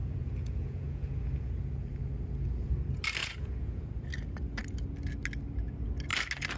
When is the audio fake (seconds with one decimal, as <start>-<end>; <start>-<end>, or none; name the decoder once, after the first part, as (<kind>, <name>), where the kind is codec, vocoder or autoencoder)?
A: 0.0-1.5 (vocoder, Vocos); 3.2-3.9